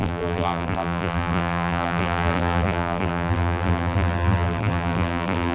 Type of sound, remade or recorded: remade